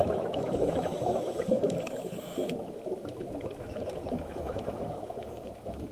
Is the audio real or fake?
fake